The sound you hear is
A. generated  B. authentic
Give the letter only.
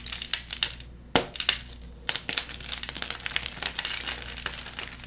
B